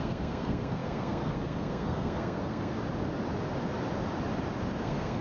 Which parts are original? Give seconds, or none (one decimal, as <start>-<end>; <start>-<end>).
2.8-4.8